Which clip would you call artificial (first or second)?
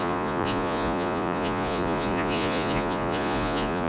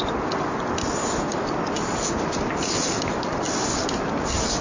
first